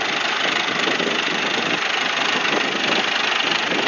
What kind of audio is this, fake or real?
real